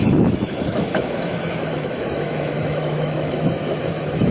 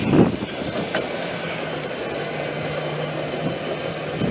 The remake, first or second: first